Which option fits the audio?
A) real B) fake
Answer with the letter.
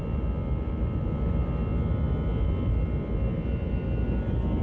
A